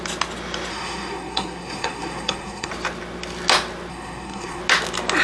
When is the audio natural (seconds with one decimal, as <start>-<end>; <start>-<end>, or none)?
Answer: 0.0-0.7; 2.7-3.9; 4.6-5.2